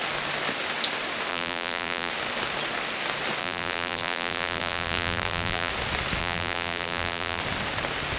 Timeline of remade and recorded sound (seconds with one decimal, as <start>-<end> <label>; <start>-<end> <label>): 0.0-1.3 recorded; 1.3-2.1 remade; 2.1-3.4 recorded; 3.4-5.7 remade; 5.7-6.2 recorded; 6.2-7.4 remade; 7.4-8.2 recorded